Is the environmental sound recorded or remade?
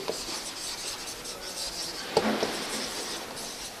recorded